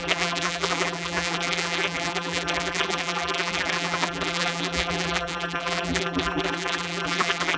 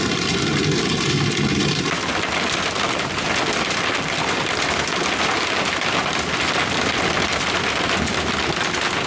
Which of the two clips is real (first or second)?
second